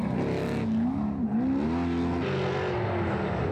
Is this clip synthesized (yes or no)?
no